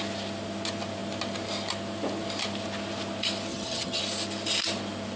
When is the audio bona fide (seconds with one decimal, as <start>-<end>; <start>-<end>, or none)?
0.0-3.5; 4.0-5.2

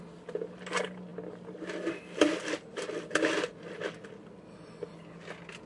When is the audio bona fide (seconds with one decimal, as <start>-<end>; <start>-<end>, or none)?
0.0-5.7

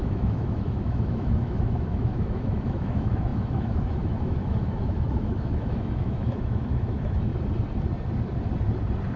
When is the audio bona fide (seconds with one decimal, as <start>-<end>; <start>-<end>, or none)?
7.3-9.2

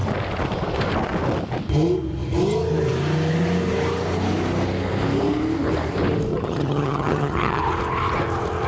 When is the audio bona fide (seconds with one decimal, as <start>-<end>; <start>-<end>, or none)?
0.0-6.3; 7.6-8.7

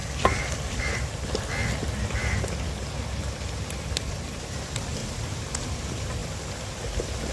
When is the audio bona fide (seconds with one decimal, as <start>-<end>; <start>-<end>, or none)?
0.8-7.3

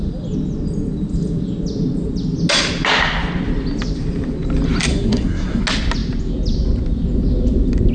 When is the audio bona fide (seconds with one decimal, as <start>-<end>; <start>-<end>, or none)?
0.0-4.9; 5.6-7.9

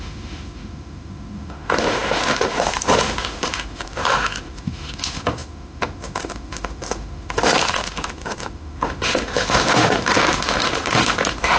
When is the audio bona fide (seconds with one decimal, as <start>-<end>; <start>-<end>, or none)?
none

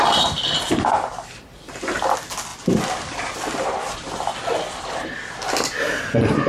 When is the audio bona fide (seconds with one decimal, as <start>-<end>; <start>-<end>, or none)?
0.0-6.5